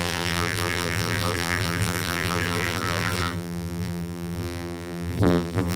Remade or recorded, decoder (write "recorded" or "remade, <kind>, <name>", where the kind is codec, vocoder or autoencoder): remade, vocoder, BigVGAN v2